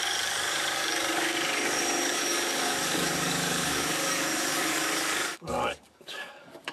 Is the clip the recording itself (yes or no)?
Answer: no